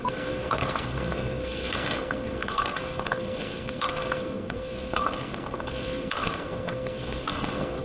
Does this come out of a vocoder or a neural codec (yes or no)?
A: yes